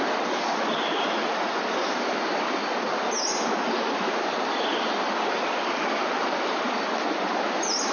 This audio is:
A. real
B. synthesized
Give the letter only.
A